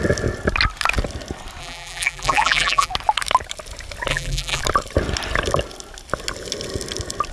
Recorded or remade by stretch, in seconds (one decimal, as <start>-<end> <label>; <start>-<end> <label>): 0.0-1.6 recorded; 1.6-2.9 remade; 2.9-4.1 recorded; 4.1-4.6 remade; 4.6-7.3 recorded